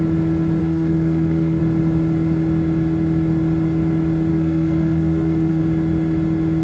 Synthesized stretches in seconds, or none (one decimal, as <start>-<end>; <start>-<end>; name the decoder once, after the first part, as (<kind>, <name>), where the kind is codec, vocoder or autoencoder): 0.6-1.6 (codec, SNAC); 4.3-5.6